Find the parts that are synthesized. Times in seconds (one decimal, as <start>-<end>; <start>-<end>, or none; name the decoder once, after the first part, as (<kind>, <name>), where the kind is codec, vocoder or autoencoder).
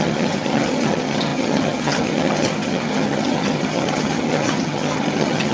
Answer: 0.0-5.5 (vocoder, HiFi-GAN)